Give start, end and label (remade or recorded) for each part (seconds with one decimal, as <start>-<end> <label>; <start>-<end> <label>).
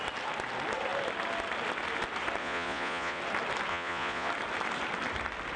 0.0-2.4 recorded; 2.4-3.2 remade; 3.2-3.7 recorded; 3.7-4.3 remade; 4.3-5.6 recorded